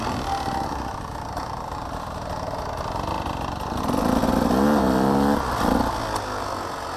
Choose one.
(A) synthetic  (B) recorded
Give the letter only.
B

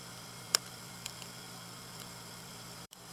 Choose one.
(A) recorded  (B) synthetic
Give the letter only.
B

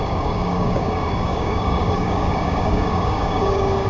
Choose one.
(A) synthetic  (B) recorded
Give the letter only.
A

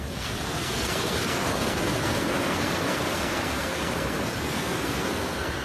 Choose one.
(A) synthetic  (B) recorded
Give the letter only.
A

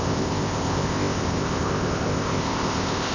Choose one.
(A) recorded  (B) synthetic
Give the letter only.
B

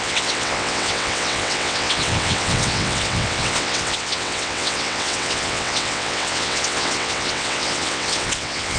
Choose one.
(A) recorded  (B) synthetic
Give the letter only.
B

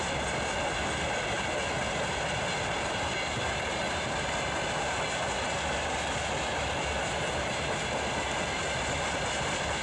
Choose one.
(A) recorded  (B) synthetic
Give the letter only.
A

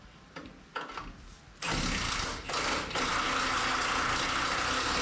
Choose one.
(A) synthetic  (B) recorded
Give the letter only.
B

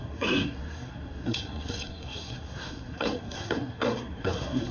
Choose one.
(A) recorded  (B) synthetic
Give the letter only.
B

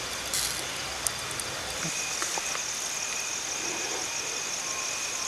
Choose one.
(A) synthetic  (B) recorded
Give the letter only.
B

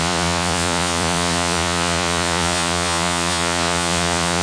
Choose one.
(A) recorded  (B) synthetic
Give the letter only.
B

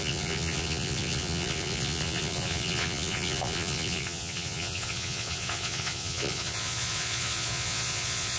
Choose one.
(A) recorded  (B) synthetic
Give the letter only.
B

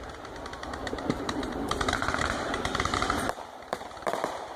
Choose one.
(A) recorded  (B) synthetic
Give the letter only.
B